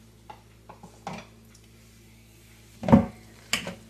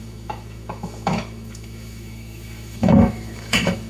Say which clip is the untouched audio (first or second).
first